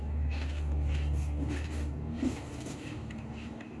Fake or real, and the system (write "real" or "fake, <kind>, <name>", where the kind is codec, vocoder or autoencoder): fake, codec, DAC